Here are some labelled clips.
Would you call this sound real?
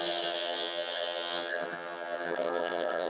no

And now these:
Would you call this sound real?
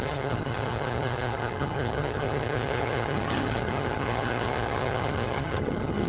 no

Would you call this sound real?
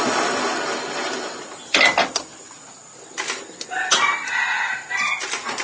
yes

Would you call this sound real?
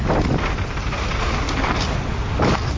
yes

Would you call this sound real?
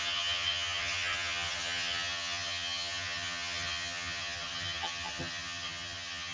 no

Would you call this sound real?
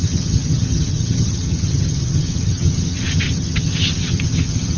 no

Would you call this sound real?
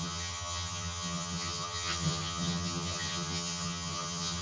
no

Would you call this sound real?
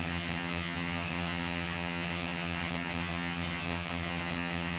no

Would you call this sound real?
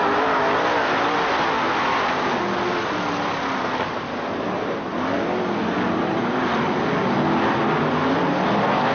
yes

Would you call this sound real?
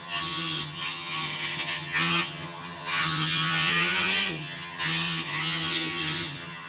no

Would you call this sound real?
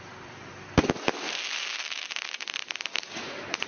yes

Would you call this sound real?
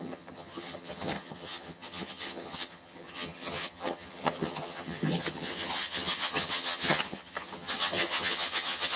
no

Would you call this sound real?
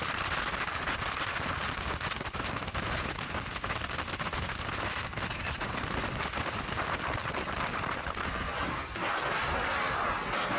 yes